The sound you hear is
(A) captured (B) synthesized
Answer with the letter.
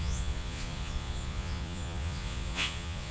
B